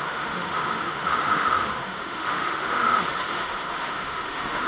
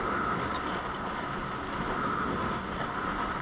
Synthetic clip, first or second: first